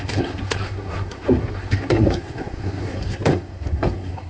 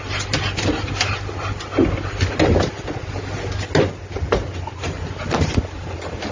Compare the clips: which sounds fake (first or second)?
first